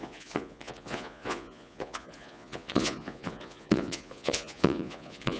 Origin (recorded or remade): remade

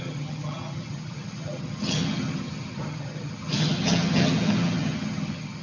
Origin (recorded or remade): remade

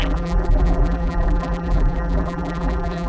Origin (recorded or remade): remade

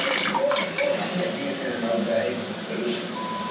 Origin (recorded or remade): recorded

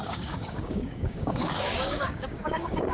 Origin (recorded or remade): remade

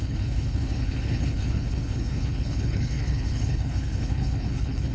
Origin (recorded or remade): remade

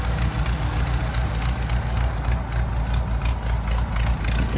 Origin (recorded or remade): recorded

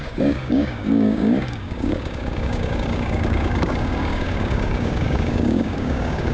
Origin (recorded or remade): remade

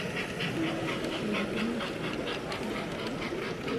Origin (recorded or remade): recorded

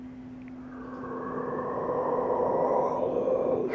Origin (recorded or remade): recorded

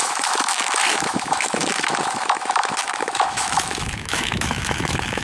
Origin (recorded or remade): remade